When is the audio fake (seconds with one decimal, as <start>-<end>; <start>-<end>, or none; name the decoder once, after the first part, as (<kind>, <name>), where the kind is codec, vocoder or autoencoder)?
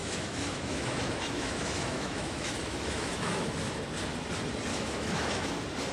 0.0-3.5 (autoencoder, DAC-VAE); 4.7-5.5